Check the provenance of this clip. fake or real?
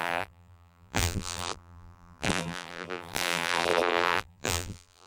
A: fake